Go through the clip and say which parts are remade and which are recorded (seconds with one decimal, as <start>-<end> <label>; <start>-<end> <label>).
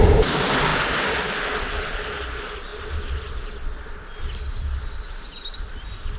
0.0-6.2 recorded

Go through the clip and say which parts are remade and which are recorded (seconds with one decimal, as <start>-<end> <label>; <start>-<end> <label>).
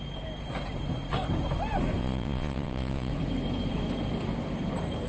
0.0-2.0 recorded; 2.0-3.1 remade; 3.1-5.1 recorded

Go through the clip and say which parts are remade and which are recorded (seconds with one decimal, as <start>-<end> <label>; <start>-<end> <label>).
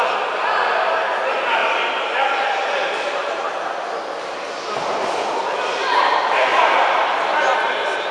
0.0-8.1 recorded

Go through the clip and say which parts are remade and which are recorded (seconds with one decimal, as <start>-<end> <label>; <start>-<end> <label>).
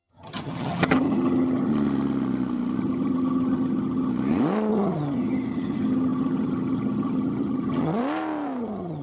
0.0-1.7 remade; 1.7-2.8 recorded; 2.8-4.1 remade; 4.1-4.7 recorded; 4.7-8.0 remade; 8.0-8.6 recorded; 8.6-9.0 remade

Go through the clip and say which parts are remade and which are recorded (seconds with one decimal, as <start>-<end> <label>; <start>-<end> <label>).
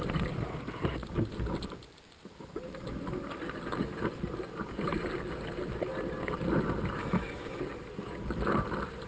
0.0-7.0 recorded; 7.0-7.6 remade; 7.6-9.1 recorded